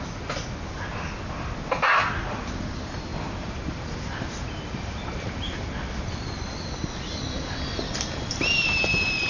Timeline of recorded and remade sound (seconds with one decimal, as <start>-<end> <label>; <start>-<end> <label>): 0.0-3.1 recorded; 3.1-5.6 remade; 5.6-9.3 recorded